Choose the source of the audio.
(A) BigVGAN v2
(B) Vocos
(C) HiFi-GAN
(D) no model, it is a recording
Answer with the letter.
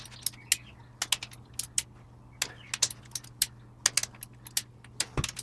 D